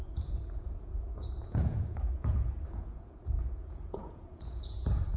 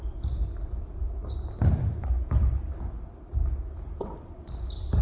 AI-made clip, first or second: first